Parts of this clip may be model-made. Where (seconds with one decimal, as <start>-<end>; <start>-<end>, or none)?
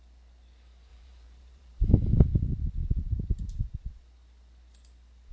0.9-1.9; 2.8-3.4